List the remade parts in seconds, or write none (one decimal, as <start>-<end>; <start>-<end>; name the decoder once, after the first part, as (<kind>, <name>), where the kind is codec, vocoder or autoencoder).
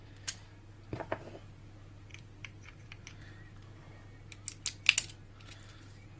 2.1-2.9 (vocoder, BigVGAN v2)